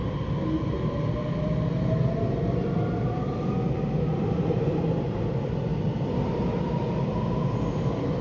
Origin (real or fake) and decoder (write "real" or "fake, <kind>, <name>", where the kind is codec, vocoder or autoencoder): real